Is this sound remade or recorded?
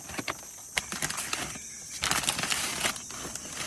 recorded